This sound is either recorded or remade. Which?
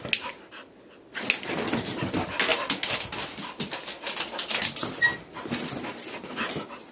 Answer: recorded